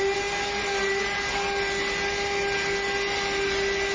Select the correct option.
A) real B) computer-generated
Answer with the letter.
A